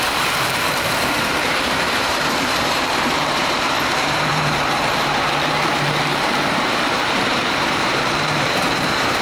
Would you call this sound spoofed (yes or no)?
yes